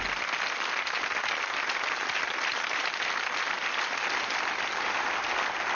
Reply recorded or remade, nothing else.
recorded